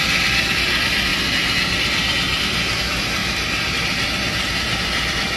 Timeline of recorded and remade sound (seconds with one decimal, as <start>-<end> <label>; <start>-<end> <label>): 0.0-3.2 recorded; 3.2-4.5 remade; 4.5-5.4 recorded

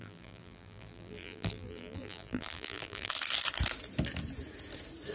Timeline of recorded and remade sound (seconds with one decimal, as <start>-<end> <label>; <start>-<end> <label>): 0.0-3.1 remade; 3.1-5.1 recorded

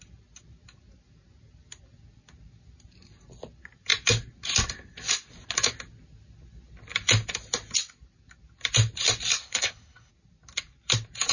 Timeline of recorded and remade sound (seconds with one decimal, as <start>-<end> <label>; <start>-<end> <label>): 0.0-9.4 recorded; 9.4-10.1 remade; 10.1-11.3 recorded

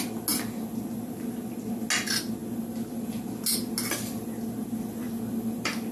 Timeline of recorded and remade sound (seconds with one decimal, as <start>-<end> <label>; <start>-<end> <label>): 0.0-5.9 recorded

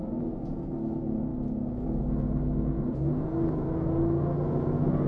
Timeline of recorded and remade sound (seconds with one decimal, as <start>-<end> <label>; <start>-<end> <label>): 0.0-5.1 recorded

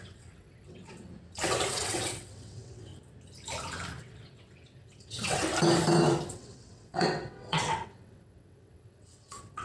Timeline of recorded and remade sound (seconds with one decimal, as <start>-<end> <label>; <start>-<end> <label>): 0.0-1.1 remade; 1.1-1.7 recorded; 1.7-2.9 remade; 2.9-4.0 recorded; 4.0-5.5 remade; 5.5-6.3 recorded; 6.3-9.6 remade